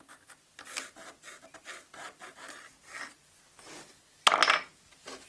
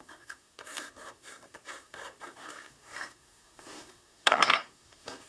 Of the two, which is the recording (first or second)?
first